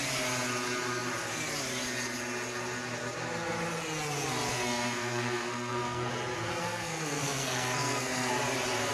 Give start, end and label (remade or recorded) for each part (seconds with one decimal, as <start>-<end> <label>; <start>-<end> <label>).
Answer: 0.0-4.5 recorded; 4.5-6.1 remade; 6.1-6.5 recorded; 6.5-8.3 remade; 8.3-8.9 recorded